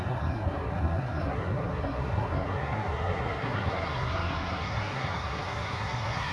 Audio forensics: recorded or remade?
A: remade